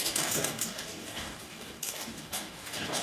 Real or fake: fake